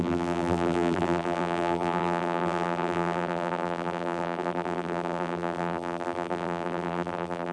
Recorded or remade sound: remade